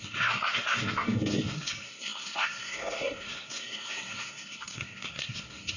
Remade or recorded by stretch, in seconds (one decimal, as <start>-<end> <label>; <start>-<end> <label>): 0.0-5.8 remade